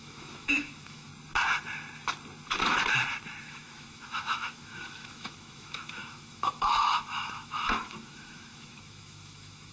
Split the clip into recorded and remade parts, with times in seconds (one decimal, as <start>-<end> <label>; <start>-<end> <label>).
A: 0.0-1.1 remade; 1.1-3.4 recorded; 3.4-9.7 remade